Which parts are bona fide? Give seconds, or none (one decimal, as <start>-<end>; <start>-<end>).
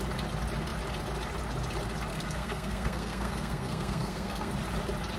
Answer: 0.0-2.1; 4.5-5.2